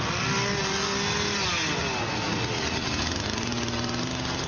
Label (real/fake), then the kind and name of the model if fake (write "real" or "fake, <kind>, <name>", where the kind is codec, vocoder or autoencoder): real